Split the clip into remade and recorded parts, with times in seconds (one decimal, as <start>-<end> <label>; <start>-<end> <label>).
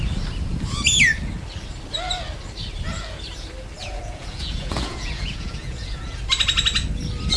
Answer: 0.0-3.8 recorded; 3.8-6.2 remade; 6.2-7.4 recorded